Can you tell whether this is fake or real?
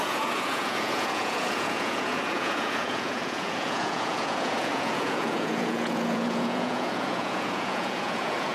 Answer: fake